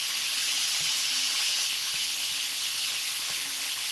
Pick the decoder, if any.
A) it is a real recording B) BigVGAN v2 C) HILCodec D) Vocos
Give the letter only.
C